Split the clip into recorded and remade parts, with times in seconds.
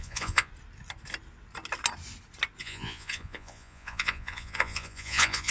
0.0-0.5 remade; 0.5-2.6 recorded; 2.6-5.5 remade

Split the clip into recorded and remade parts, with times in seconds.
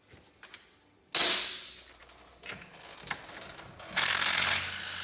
0.0-5.0 recorded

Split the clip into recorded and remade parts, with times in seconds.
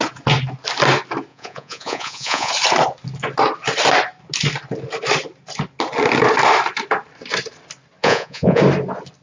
0.0-1.3 recorded; 1.3-2.5 remade; 2.5-8.0 recorded; 8.0-8.6 remade; 8.6-9.2 recorded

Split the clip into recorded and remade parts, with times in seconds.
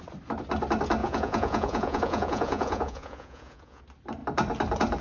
0.0-1.0 recorded; 1.0-3.8 remade; 3.8-5.0 recorded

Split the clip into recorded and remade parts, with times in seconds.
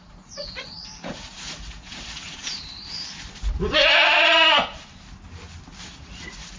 0.0-2.4 remade; 2.4-5.8 recorded; 5.8-6.6 remade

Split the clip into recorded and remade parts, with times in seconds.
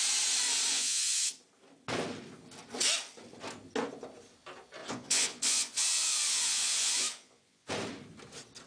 0.0-0.7 recorded; 0.7-1.3 remade; 1.3-4.8 recorded; 4.8-7.7 remade; 7.7-8.7 recorded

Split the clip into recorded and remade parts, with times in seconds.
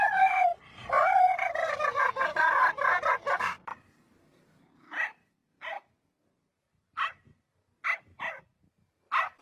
0.0-9.4 recorded